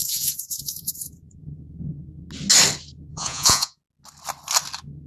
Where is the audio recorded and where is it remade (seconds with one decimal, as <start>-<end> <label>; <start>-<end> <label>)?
0.0-1.6 remade; 1.6-3.1 recorded; 3.1-3.8 remade; 3.8-5.1 recorded